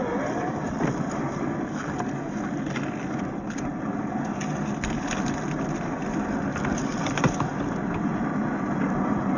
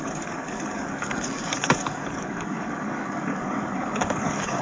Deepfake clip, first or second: second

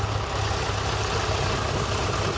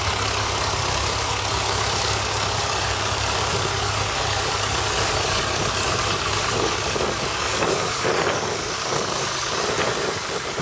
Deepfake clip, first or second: second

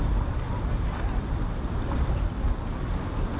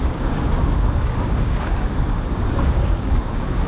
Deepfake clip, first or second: second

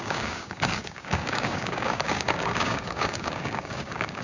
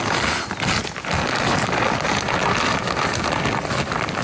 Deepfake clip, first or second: first